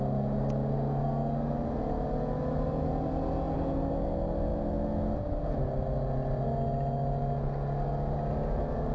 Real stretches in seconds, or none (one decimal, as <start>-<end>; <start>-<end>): 0.0-8.9